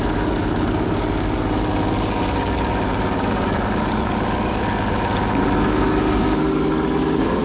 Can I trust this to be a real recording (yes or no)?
no